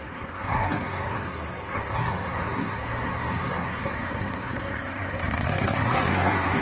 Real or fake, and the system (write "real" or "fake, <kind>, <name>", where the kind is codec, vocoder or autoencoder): fake, codec, SNAC